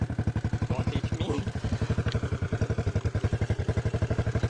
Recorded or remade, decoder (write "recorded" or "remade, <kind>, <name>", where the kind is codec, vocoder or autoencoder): recorded